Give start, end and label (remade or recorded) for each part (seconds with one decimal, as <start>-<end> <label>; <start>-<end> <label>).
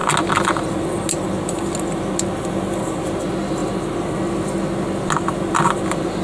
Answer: 0.0-6.2 recorded